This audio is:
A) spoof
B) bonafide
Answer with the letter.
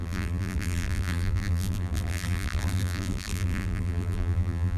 A